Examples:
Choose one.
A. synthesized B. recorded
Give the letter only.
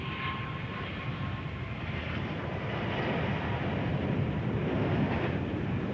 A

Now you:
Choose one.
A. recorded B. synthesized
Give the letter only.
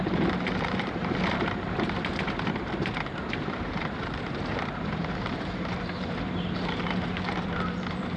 B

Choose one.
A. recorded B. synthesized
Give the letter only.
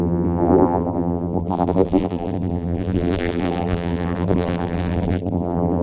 B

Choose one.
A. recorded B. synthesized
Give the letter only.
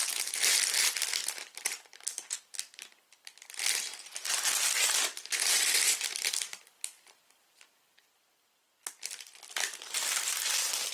A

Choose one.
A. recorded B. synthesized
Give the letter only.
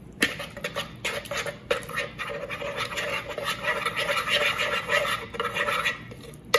A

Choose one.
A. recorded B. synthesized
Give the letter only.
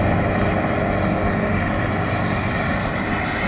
A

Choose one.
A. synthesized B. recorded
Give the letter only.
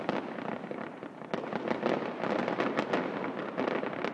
B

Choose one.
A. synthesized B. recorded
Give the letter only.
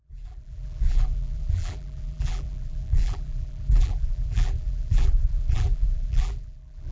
A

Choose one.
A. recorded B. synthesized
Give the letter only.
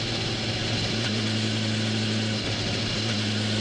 A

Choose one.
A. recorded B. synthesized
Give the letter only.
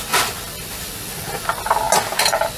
A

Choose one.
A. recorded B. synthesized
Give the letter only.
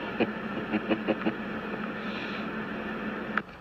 A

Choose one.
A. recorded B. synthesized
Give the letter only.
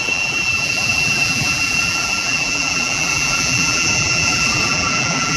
B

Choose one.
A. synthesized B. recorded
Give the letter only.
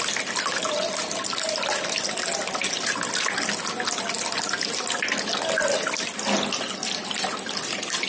B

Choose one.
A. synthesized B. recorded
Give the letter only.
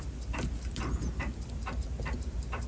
B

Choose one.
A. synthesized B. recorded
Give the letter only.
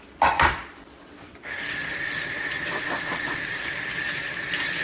A